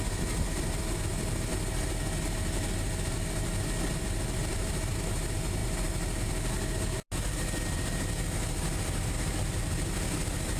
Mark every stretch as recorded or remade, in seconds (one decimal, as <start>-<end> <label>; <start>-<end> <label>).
0.0-10.6 recorded